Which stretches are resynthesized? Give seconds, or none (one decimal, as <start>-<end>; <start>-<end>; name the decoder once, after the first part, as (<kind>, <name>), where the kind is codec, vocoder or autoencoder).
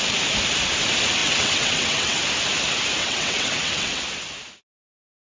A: 1.2-2.2 (vocoder, WaveNeXt); 3.0-4.0